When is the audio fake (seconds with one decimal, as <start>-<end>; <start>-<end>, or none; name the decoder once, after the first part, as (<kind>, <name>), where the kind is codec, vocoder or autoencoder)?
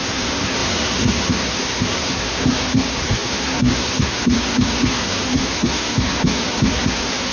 0.0-7.3 (codec, SNAC)